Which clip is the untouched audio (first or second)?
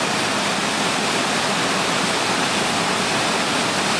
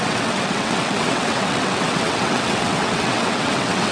first